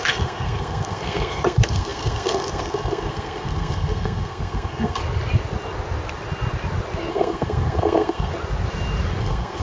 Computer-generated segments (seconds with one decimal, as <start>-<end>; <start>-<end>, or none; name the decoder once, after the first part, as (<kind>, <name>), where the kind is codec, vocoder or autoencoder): 0.0-5.0 (codec, SNAC); 7.1-8.3; 9.2-9.6

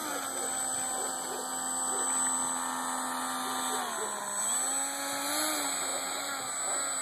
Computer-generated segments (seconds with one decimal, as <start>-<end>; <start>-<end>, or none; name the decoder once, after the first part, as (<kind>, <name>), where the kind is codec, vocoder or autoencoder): none

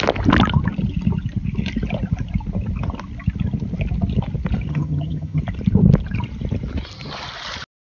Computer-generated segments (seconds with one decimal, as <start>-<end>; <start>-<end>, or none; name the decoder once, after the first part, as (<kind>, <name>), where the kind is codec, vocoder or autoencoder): 4.7-5.4 (vocoder, HiFi-GAN)

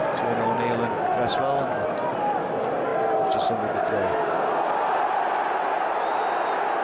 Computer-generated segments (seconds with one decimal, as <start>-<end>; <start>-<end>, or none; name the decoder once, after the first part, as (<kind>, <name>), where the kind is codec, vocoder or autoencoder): none

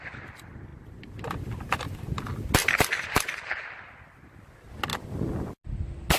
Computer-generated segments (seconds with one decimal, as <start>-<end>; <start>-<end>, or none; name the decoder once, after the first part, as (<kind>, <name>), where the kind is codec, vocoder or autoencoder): 0.7-2.0 (vocoder, BigVGAN v2)

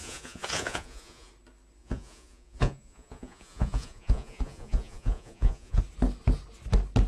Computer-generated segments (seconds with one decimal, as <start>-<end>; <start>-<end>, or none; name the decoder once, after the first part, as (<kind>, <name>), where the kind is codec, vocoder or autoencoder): 0.0-1.3 (vocoder, Vocos); 1.8-5.8

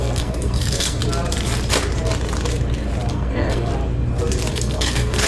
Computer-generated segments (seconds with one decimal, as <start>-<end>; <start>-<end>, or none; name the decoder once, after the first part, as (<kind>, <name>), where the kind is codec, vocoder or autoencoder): 0.0-1.0 (codec, SNAC); 3.1-3.7; 4.5-5.3